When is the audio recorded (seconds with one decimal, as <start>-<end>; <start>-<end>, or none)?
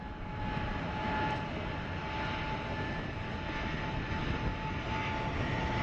0.0-5.8